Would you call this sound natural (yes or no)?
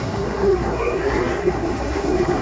no